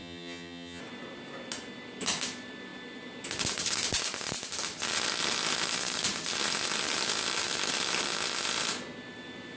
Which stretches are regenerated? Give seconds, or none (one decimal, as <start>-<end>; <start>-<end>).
0.0-0.8